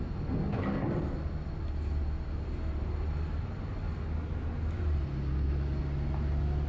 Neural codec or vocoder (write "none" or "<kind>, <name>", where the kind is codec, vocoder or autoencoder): none